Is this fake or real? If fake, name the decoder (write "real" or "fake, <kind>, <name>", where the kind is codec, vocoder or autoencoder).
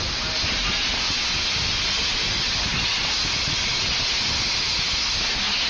real